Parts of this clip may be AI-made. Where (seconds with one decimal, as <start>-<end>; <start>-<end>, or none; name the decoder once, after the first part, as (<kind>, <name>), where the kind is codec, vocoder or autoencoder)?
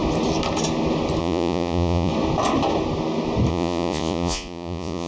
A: 1.2-2.1 (vocoder, Vocos); 3.5-5.1